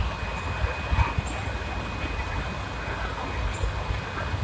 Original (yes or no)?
yes